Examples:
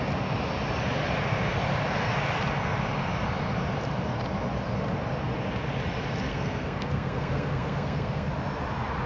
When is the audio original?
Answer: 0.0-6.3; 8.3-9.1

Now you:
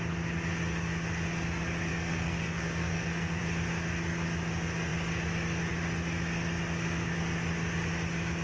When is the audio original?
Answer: 0.0-1.9; 3.4-8.4

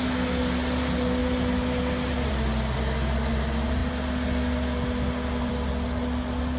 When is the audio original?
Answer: 0.0-6.6